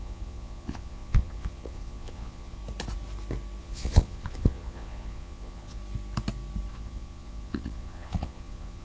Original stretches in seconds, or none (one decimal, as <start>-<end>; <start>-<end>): 2.6-3.6; 5.8-6.7